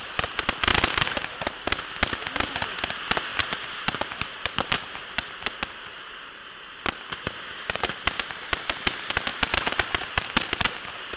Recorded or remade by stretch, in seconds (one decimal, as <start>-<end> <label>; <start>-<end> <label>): 0.0-3.3 recorded; 3.3-7.8 remade; 7.8-9.3 recorded; 9.3-11.2 remade